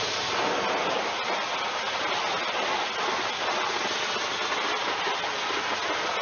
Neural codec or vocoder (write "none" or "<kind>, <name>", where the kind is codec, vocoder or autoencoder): none